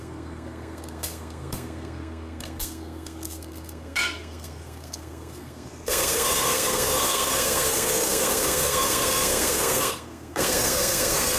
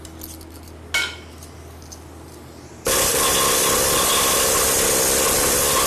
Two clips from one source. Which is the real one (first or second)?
second